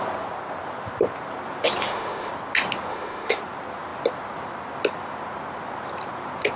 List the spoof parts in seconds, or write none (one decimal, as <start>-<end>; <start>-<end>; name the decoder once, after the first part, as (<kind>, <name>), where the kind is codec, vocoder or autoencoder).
1.8-2.3 (autoencoder, DAC-VAE); 2.9-3.4